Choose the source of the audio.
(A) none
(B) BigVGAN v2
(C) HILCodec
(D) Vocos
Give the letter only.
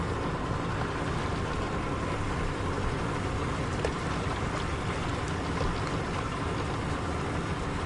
A